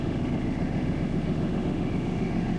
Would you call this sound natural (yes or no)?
no